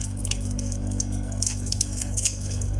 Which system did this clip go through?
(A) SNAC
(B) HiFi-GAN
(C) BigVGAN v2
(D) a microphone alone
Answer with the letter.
A